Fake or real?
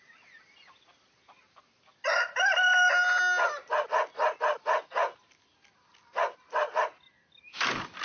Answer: real